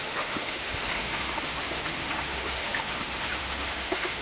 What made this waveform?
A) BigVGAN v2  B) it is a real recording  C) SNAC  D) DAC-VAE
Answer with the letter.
D